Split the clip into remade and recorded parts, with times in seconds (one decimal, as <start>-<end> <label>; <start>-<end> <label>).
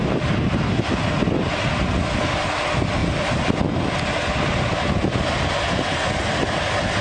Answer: 0.0-7.0 recorded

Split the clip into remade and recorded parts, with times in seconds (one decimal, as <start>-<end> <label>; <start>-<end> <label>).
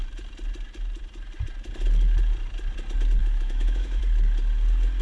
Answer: 0.0-3.2 recorded; 3.2-4.0 remade; 4.0-5.0 recorded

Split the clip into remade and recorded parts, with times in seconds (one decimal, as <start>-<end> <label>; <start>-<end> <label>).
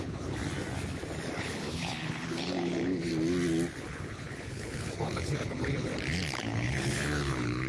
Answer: 0.0-0.4 remade; 0.4-1.4 recorded; 1.4-3.1 remade; 3.1-3.8 recorded; 3.8-5.9 remade; 5.9-6.4 recorded; 6.4-7.7 remade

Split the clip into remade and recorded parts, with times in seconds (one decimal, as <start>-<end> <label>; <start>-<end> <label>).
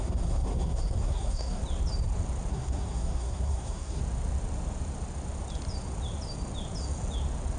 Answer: 0.0-1.6 remade; 1.6-2.5 recorded; 2.5-4.0 remade; 4.0-7.6 recorded